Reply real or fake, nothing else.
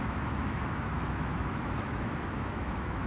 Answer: fake